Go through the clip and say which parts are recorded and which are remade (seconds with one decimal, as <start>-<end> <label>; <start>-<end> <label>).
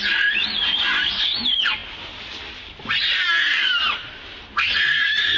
0.0-0.4 recorded; 0.4-1.2 remade; 1.2-5.4 recorded